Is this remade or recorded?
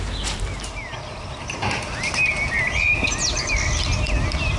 recorded